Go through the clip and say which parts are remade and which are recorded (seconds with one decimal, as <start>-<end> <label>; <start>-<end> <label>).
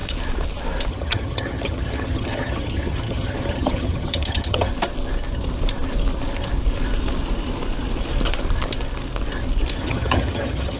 0.0-0.9 recorded; 0.9-4.7 remade; 4.7-9.8 recorded; 9.8-10.8 remade